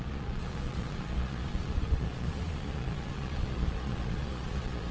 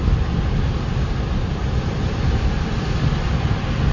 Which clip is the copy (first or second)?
first